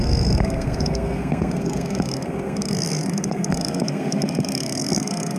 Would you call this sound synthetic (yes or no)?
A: yes